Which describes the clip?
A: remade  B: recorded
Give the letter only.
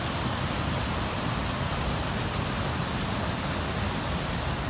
B